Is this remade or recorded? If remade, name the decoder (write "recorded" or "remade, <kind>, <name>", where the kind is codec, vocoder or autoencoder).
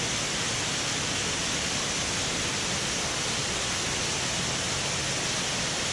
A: recorded